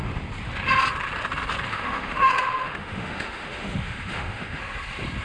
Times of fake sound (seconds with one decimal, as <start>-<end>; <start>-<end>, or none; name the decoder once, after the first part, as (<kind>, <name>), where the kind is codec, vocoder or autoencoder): 1.7-4.6 (autoencoder, DAC-VAE)